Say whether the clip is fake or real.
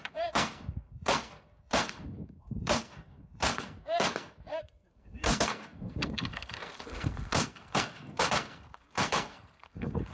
fake